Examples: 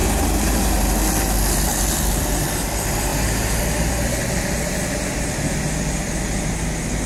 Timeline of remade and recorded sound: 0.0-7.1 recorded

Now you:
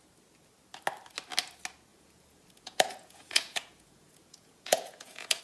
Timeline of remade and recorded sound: 0.0-1.9 recorded; 1.9-5.4 remade

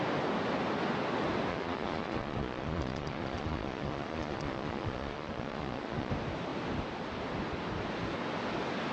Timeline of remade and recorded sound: 0.0-1.5 recorded; 1.5-6.1 remade; 6.1-8.9 recorded